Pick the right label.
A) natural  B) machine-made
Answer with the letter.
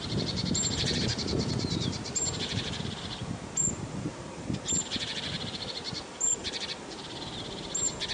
B